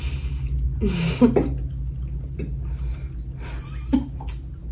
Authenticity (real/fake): real